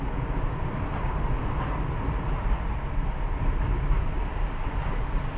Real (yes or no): yes